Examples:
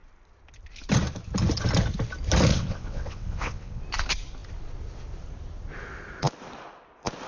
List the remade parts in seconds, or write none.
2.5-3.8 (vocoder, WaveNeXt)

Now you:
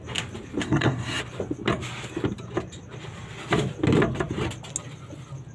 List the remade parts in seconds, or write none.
0.6-1.2 (codec, SNAC)

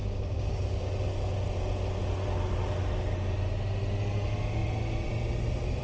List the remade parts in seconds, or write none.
0.0-0.8 (codec, DAC)

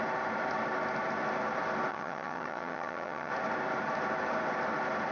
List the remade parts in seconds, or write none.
1.9-3.3 (vocoder, HiFi-GAN)

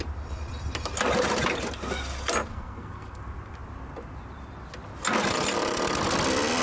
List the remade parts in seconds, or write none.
2.5-3.2 (codec, SNAC)

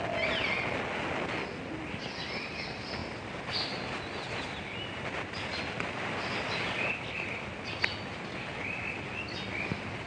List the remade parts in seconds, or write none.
none

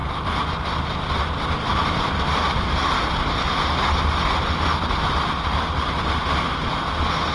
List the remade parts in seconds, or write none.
none